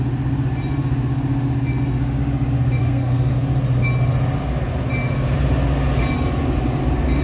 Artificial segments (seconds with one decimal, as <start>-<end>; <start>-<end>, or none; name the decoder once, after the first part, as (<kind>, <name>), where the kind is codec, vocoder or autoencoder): 2.8-3.3 (codec, SNAC)